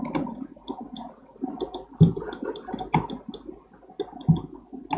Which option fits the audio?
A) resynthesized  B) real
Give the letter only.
B